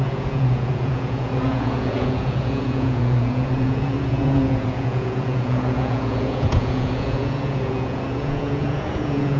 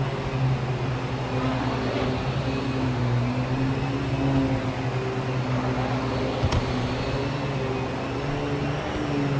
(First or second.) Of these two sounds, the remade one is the first